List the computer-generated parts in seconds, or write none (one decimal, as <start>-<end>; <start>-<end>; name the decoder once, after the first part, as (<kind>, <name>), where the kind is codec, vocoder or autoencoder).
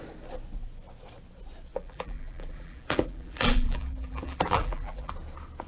1.7-5.1 (vocoder, BigVGAN v2)